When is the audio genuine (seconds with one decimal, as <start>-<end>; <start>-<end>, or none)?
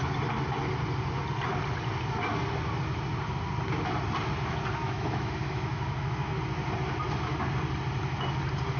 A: 0.0-4.8; 6.3-8.8